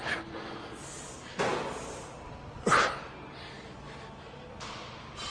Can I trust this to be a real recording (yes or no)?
yes